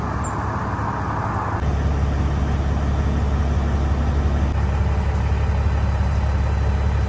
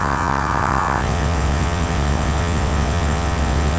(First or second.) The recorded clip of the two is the first